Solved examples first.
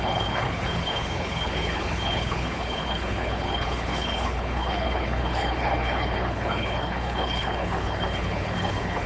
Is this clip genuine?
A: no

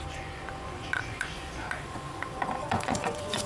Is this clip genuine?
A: no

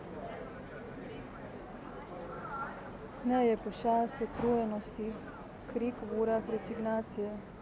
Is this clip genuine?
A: yes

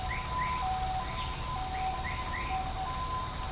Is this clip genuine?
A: yes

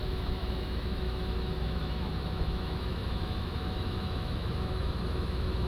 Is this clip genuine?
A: no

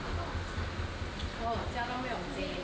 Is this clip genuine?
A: yes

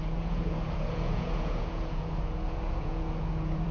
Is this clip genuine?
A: no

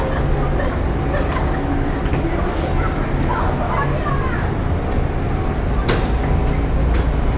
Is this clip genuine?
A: yes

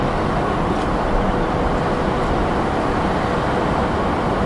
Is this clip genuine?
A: yes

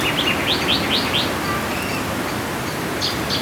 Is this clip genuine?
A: yes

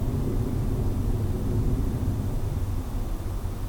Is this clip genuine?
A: yes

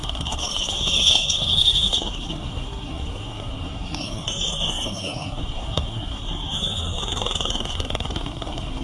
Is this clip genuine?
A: no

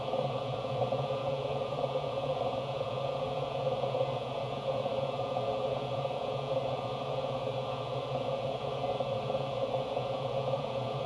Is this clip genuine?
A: no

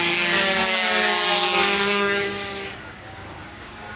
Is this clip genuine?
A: no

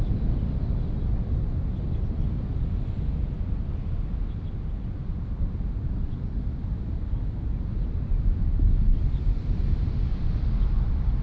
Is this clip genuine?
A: yes